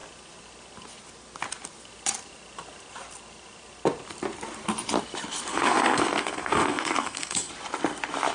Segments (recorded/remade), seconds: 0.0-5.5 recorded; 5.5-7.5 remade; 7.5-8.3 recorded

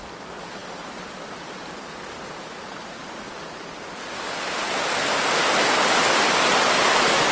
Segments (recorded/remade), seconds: 0.0-7.3 recorded

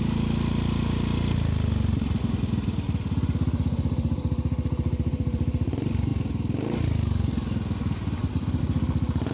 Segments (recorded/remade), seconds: 0.0-9.3 recorded